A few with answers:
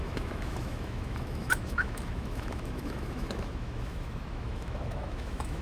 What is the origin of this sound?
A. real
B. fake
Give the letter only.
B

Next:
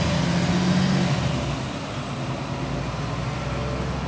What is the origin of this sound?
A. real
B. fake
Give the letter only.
A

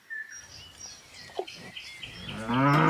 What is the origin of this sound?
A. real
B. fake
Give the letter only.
A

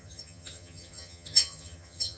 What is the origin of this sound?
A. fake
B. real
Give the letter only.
A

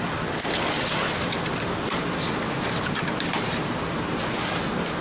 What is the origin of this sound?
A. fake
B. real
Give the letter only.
B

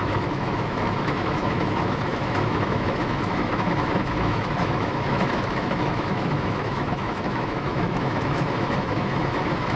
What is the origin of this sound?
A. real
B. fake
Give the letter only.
B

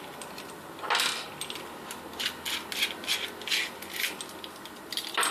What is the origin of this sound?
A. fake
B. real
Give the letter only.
B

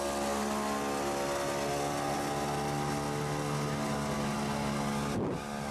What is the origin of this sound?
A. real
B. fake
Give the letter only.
A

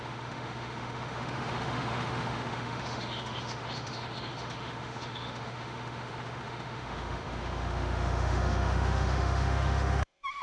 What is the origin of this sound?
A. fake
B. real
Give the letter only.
A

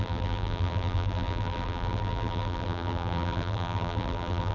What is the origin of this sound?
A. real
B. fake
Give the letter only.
B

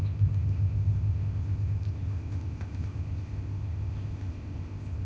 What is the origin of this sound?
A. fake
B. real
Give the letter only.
A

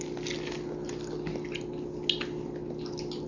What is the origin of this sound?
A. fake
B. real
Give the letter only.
B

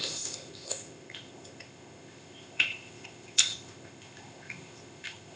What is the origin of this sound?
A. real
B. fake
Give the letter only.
B